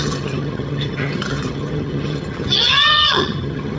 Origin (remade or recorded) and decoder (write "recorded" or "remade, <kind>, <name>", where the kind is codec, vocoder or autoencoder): remade, vocoder, HiFi-GAN